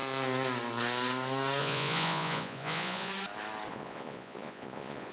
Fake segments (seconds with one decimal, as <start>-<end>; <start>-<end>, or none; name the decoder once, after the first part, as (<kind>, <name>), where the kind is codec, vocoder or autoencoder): 1.6-3.1 (vocoder, Vocos); 3.7-5.1